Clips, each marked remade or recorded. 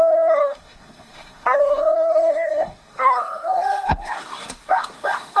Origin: remade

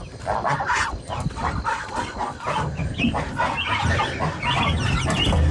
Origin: recorded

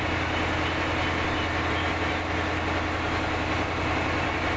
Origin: recorded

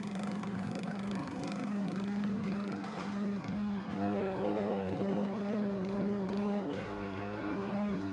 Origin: remade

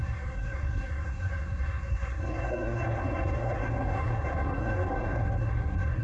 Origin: remade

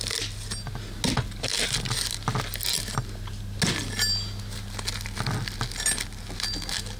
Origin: recorded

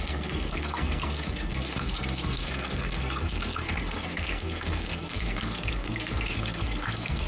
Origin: remade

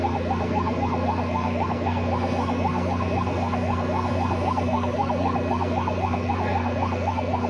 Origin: remade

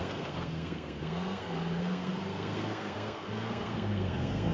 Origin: remade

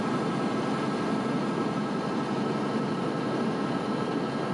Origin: recorded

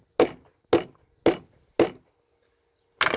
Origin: recorded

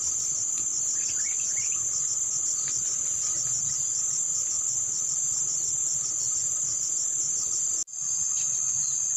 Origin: recorded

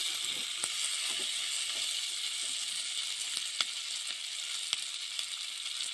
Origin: recorded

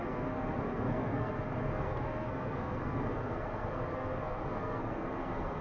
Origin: remade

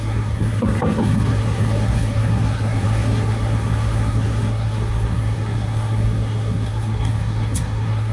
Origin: remade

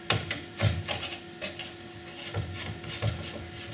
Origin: recorded